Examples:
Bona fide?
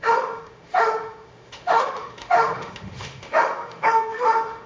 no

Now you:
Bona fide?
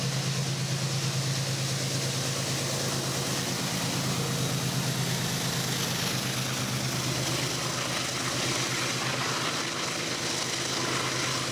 yes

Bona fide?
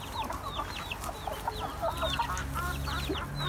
yes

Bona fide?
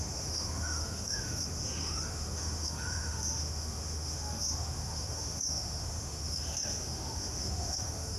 no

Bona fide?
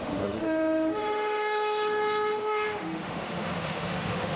no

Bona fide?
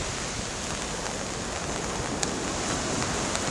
yes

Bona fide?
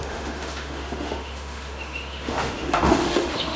no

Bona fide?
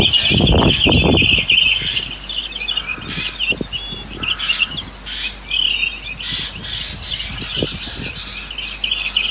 yes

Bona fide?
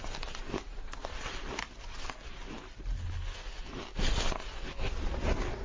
yes